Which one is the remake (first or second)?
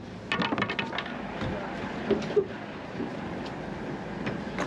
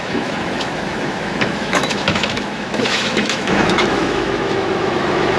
second